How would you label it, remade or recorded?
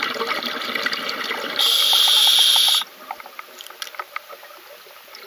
recorded